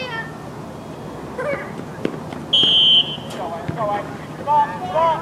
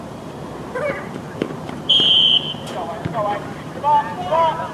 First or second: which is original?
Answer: first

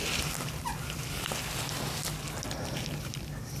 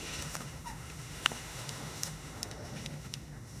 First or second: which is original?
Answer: first